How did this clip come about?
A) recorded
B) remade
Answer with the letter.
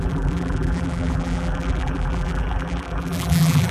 B